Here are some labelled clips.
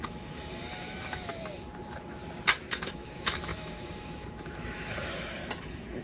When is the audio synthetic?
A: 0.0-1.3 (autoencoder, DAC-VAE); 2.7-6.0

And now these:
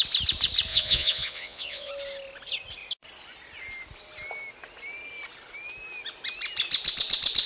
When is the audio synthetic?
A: 0.7-1.9 (vocoder, Vocos)

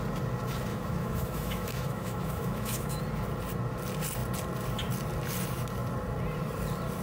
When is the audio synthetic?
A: 0.7-3.0 (autoencoder, DAC-VAE)

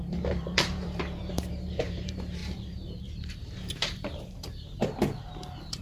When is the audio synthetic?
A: 0.0-5.8 (vocoder, BigVGAN v2)

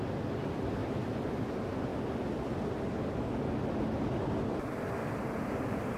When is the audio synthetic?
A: 0.8-1.5 (vocoder, BigVGAN v2)